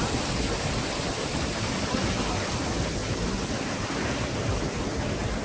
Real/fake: real